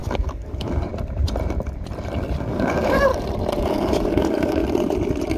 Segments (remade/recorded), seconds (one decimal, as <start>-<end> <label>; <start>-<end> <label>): 0.0-0.9 remade; 0.9-2.4 recorded; 2.4-3.1 remade; 3.1-3.6 recorded; 3.6-4.6 remade; 4.6-5.4 recorded